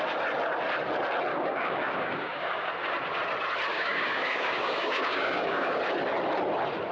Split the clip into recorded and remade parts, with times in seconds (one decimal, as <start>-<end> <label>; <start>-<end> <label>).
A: 0.0-1.3 recorded; 1.3-2.7 remade; 2.7-3.7 recorded; 3.7-5.8 remade; 5.8-6.9 recorded